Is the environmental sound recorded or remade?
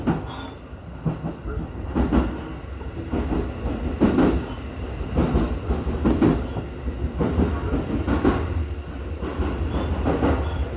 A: recorded